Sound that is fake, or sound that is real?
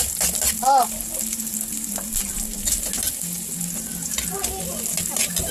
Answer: real